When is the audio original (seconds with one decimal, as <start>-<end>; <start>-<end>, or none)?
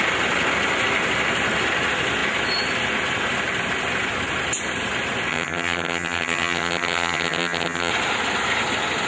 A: 0.0-5.3; 7.9-9.1